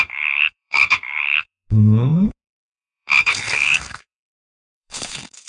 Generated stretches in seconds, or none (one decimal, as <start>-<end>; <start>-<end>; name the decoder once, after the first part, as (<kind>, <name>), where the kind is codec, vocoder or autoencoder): 0.0-5.5 (codec, SNAC)